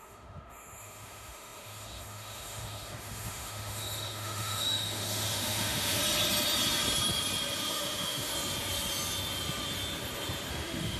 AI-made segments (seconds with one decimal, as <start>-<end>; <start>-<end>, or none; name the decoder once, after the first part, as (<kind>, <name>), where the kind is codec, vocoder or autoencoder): 0.0-6.0 (autoencoder, DAC-VAE); 7.7-8.3; 10.5-11.0